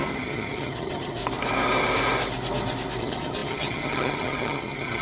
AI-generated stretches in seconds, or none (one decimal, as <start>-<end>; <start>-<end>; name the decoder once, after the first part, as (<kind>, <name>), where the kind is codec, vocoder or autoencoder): 0.0-1.2 (vocoder, HiFi-GAN); 3.0-5.0